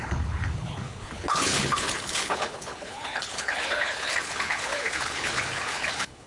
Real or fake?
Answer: fake